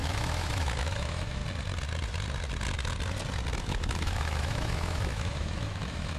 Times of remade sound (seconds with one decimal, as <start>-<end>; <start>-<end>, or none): 0.0-1.4; 3.6-6.2